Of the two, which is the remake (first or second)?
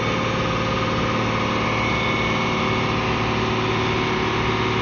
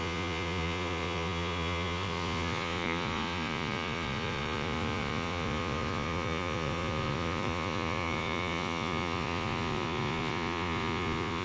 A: second